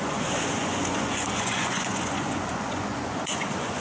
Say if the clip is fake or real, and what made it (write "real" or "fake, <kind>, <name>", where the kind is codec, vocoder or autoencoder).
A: fake, vocoder, Vocos